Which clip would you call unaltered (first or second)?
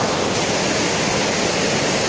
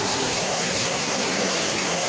first